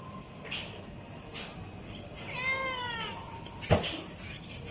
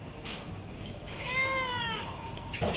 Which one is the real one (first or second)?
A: first